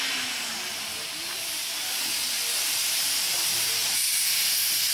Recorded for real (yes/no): yes